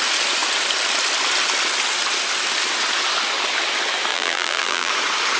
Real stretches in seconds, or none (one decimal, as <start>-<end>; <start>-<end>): 0.0-4.1; 4.9-5.4